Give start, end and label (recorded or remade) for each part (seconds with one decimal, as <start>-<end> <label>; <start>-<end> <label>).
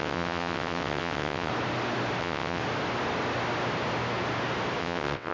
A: 0.0-1.5 remade; 1.5-2.2 recorded; 2.2-2.6 remade; 2.6-4.8 recorded; 4.8-5.3 remade